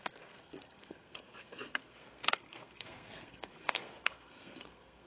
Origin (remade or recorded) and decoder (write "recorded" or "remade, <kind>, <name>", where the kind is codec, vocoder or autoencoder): remade, codec, SNAC